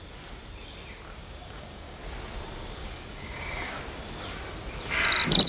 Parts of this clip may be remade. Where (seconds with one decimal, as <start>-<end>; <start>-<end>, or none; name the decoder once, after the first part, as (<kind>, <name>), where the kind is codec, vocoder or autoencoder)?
1.2-2.0 (codec, DAC); 2.8-3.8